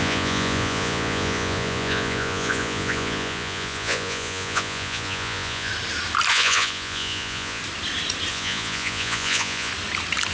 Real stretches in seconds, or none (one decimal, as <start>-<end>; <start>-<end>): 5.7-6.3; 7.6-8.3; 9.7-10.3